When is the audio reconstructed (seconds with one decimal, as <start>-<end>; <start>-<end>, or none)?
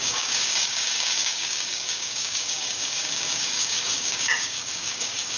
0.0-5.4